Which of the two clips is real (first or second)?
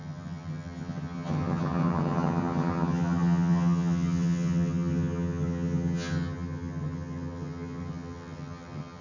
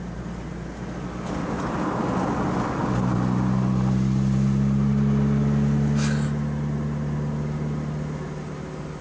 second